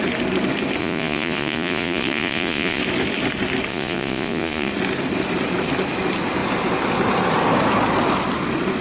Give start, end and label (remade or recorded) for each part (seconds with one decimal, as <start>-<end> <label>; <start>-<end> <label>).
0.0-0.8 recorded; 0.8-2.8 remade; 2.8-3.7 recorded; 3.7-4.7 remade; 4.7-8.8 recorded